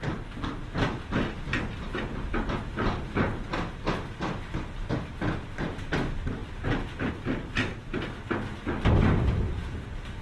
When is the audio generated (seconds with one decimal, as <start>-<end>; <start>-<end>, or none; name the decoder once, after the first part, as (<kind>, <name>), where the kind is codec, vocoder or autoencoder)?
none